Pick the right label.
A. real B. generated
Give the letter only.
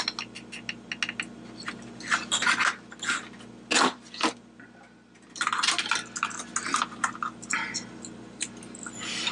A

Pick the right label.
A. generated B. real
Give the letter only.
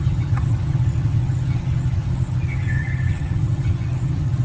A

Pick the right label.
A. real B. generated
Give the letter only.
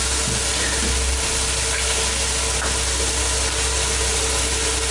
A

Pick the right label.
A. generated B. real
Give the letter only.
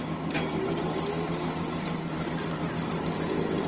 B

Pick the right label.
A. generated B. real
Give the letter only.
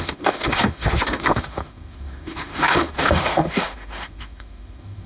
A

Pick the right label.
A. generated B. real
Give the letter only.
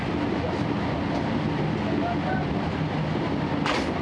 B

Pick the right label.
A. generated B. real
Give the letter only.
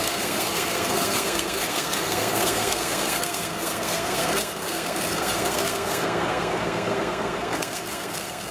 A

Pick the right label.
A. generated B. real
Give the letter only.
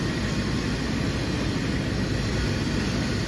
B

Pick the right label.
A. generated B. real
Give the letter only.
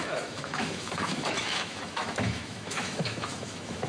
A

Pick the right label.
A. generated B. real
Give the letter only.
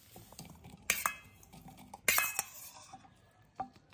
B